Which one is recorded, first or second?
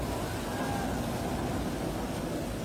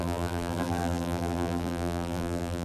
first